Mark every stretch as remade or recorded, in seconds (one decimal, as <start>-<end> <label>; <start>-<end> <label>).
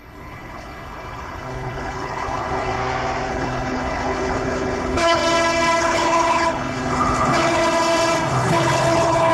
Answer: 0.0-2.8 remade; 2.8-3.3 recorded; 3.3-5.2 remade; 5.2-5.8 recorded; 5.8-7.6 remade; 7.6-8.3 recorded; 8.3-9.3 remade